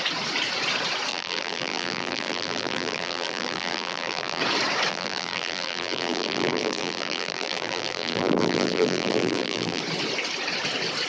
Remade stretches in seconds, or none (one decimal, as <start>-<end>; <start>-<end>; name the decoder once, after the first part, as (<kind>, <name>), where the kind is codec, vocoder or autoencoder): 1.1-4.4 (vocoder, BigVGAN v2); 4.9-9.8

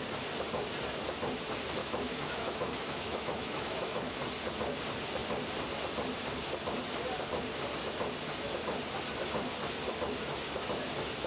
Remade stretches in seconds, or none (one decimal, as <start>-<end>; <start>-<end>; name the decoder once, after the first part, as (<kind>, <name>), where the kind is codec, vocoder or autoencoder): 1.8-4.2 (autoencoder, DAC-VAE)

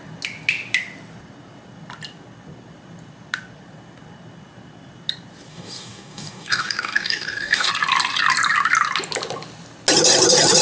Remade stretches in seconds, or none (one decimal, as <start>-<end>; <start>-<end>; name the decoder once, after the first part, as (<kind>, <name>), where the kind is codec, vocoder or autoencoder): 5.5-7.7 (codec, DAC)

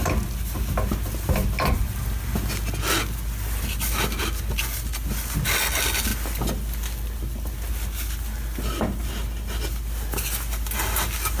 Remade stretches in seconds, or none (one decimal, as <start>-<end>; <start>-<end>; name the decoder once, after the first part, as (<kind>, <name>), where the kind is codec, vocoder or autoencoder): none

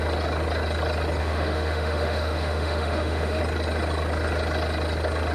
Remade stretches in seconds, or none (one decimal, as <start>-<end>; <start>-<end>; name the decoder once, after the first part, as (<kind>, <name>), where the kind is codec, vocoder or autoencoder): 1.2-3.4 (autoencoder, DAC-VAE)

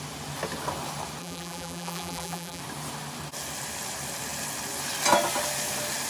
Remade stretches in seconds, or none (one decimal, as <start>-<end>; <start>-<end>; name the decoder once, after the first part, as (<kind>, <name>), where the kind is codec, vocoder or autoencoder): 1.2-2.6 (vocoder, BigVGAN v2)

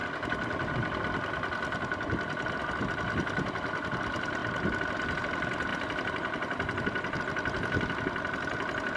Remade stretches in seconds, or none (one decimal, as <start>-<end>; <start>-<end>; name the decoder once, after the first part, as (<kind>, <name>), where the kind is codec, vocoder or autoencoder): 0.0-4.4 (vocoder, BigVGAN v2); 5.2-9.0